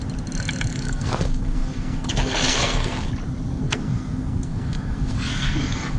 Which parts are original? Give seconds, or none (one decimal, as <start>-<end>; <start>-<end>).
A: 0.0-0.7; 3.1-3.5

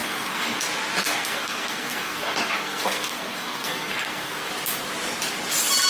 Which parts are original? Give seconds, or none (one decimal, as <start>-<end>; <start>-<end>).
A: 0.6-1.0; 4.5-5.9

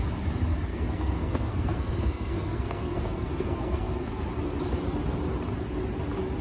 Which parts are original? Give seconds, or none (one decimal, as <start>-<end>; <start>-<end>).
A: 0.0-0.7; 4.2-6.4

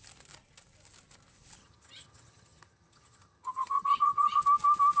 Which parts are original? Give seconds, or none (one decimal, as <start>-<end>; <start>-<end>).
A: 0.0-1.6; 4.4-5.0

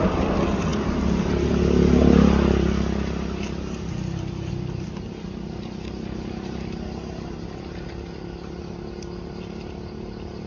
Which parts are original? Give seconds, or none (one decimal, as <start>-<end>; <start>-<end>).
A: 0.0-10.5